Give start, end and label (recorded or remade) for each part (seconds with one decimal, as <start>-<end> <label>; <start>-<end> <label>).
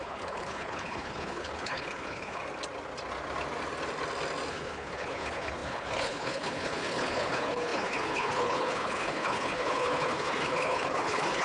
0.0-2.4 remade; 2.4-4.5 recorded; 4.5-11.4 remade